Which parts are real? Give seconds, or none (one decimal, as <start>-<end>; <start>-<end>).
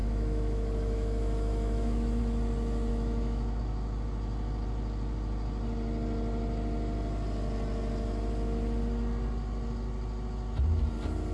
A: 2.2-2.9; 3.6-11.3